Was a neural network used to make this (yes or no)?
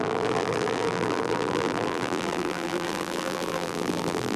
yes